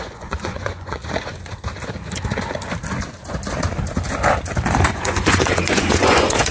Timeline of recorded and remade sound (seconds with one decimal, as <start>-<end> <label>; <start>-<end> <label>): 0.0-1.0 remade; 1.0-4.9 recorded; 4.9-6.5 remade